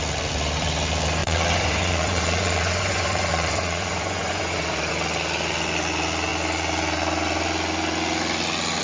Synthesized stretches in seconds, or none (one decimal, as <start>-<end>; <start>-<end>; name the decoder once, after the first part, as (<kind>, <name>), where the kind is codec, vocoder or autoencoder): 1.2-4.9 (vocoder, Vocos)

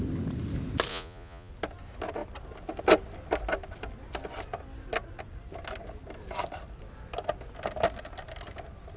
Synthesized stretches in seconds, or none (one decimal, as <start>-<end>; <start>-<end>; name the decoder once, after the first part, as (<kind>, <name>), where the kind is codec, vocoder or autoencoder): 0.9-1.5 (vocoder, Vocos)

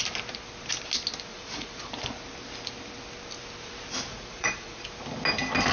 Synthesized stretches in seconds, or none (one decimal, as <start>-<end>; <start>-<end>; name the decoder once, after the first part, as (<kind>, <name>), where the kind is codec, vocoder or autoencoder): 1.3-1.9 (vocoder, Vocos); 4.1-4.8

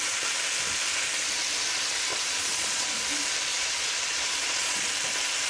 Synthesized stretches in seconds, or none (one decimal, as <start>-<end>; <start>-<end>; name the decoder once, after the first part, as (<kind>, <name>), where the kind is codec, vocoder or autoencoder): 2.1-3.0 (vocoder, Vocos); 3.5-4.9

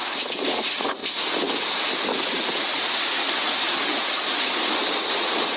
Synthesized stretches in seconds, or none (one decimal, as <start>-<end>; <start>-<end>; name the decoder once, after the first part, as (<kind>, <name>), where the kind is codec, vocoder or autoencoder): 0.0-1.0 (vocoder, Vocos); 2.2-3.2; 5.1-5.6

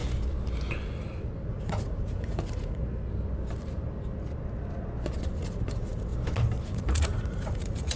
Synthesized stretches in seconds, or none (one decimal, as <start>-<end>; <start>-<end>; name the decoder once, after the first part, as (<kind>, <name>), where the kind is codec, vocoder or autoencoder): 1.5-2.8 (vocoder, Vocos); 5.4-6.1; 6.6-8.0